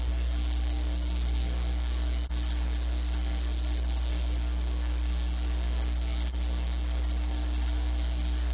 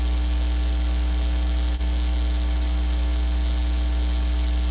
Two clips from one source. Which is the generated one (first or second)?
first